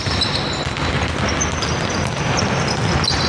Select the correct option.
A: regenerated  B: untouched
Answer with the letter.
B